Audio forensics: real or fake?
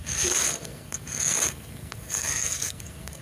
fake